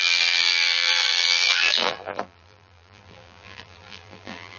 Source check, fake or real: fake